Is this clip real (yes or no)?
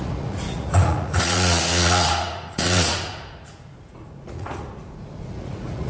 no